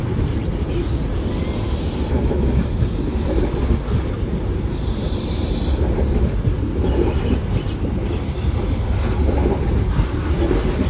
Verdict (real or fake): real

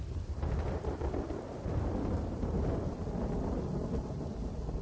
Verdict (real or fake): real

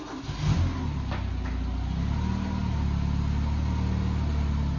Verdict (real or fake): real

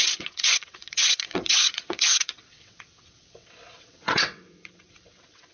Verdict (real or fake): fake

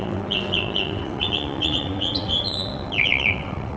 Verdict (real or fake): fake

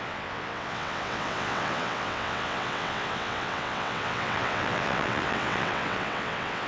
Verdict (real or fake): fake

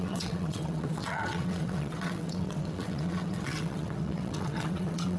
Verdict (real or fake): fake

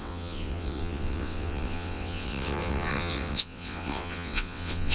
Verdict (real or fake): fake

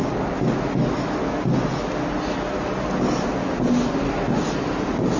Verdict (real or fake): real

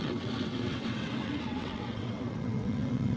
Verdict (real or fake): fake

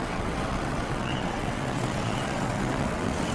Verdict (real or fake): fake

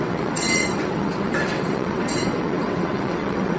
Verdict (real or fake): fake